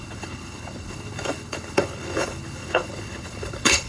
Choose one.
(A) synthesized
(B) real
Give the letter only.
A